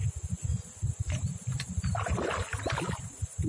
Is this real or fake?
real